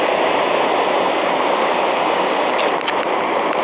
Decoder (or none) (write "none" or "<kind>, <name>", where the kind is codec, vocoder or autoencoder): none